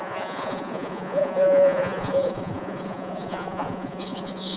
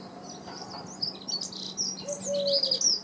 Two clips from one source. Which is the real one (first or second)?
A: second